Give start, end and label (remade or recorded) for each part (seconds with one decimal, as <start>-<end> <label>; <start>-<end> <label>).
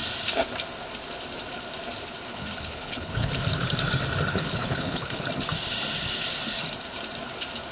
0.0-2.3 recorded; 2.3-3.3 remade; 3.3-4.3 recorded; 4.3-5.2 remade; 5.2-7.7 recorded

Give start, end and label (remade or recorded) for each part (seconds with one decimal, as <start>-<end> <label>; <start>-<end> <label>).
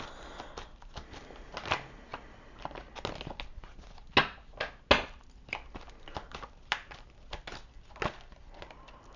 0.0-9.2 recorded